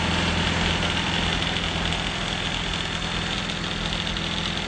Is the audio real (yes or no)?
yes